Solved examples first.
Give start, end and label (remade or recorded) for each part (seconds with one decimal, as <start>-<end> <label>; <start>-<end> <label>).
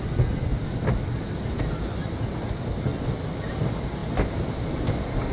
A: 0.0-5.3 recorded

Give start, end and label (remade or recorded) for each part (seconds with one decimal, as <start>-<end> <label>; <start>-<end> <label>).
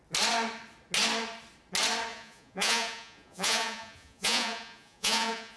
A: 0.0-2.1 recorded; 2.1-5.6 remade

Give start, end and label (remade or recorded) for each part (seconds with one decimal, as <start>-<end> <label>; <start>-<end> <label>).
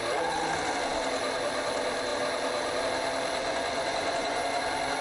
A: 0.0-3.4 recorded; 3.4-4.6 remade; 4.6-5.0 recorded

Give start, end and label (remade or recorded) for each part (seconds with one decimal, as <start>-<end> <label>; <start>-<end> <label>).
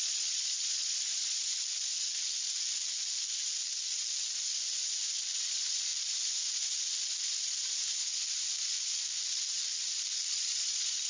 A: 0.0-1.4 remade; 1.4-5.5 recorded; 5.5-5.9 remade; 5.9-10.3 recorded; 10.3-11.1 remade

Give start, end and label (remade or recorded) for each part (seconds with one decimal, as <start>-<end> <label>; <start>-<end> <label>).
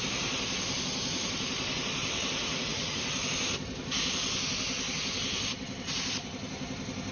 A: 0.0-2.4 recorded; 2.4-3.0 remade; 3.0-7.1 recorded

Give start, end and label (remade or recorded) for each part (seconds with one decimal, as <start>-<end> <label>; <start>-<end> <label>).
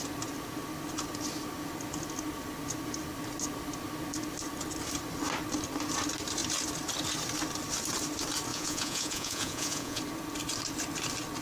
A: 0.0-8.5 recorded; 8.5-10.0 remade; 10.0-11.4 recorded